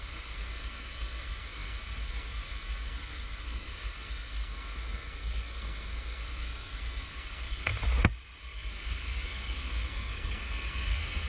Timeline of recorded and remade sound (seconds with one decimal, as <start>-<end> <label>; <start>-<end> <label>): 0.0-7.7 remade; 7.7-8.4 recorded; 8.4-11.3 remade